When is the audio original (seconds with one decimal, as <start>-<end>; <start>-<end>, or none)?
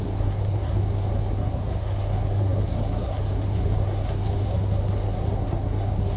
none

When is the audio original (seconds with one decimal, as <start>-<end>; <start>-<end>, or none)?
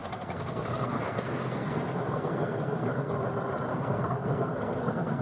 3.1-3.7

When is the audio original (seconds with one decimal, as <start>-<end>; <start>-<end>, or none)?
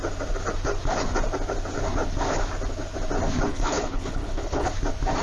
0.0-3.5; 4.7-5.2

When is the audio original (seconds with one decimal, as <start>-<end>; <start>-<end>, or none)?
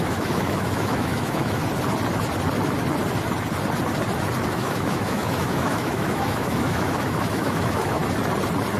1.6-4.5; 8.0-8.8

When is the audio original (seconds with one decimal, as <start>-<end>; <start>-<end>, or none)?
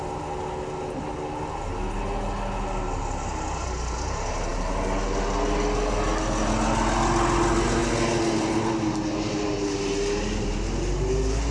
0.0-11.5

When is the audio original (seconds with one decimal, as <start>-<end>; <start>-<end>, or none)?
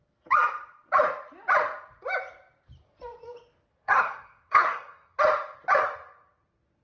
0.0-3.7; 5.2-6.8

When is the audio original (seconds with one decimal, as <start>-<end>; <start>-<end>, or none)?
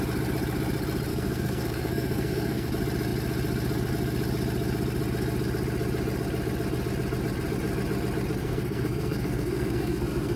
0.0-1.1; 2.7-8.4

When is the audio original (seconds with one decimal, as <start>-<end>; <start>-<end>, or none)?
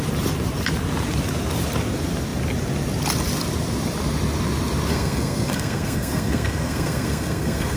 0.0-4.9